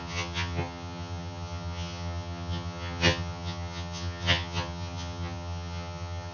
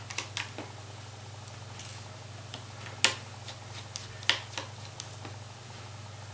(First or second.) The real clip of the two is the second